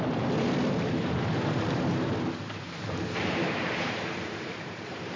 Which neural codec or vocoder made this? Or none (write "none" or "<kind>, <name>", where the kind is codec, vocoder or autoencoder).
vocoder, BigVGAN v2